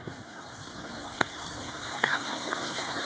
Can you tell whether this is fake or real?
fake